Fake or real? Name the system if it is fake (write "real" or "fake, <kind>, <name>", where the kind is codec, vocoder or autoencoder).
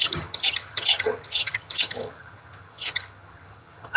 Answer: fake, vocoder, HiFi-GAN